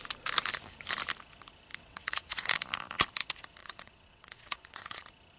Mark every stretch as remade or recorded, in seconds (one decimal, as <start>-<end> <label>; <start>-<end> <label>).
0.0-1.7 recorded; 1.7-2.5 remade; 2.5-3.6 recorded; 3.6-5.0 remade; 5.0-5.4 recorded